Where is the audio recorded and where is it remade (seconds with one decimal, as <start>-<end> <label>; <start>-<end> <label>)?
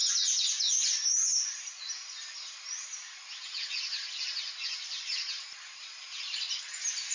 0.0-7.1 recorded